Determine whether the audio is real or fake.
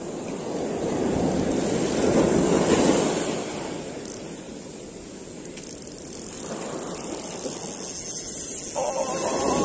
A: real